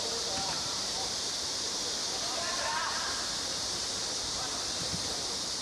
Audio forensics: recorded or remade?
remade